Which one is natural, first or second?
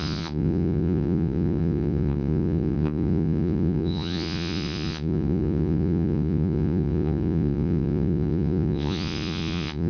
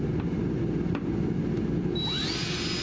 second